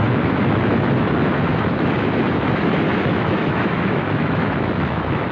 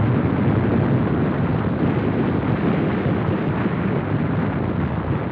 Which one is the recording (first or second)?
second